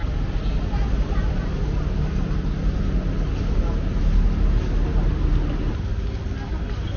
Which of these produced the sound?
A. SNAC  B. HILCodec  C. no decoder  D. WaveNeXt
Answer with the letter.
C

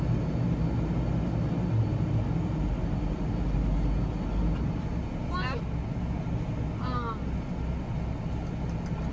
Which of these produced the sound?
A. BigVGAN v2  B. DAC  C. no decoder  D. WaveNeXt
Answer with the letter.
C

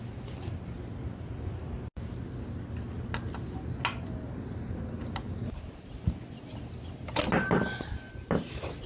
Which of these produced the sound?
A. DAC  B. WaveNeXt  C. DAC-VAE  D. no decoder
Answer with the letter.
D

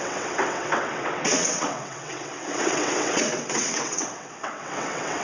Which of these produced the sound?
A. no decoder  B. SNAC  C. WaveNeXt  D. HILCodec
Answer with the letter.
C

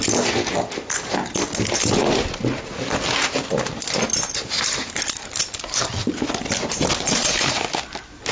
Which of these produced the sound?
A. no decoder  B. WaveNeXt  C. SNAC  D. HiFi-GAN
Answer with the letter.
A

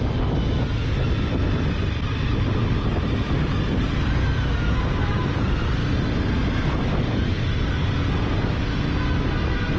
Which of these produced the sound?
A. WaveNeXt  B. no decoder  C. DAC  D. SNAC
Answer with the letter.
B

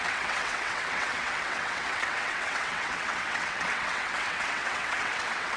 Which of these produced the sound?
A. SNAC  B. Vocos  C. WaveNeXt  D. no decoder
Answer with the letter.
C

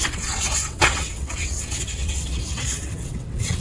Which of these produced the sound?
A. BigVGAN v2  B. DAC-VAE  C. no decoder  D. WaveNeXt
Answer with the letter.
D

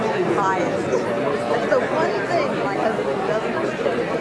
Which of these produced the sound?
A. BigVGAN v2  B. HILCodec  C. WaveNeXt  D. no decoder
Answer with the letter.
D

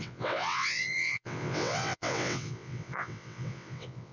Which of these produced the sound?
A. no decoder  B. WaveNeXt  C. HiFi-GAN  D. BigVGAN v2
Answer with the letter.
B